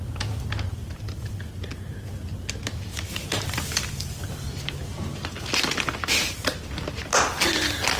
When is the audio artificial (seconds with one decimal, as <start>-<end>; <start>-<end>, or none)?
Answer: 0.8-1.4; 2.9-4.5